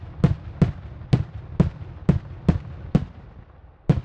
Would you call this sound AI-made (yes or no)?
no